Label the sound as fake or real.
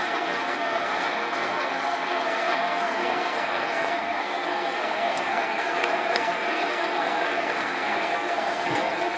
fake